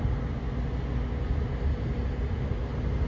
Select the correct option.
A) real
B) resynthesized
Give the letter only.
A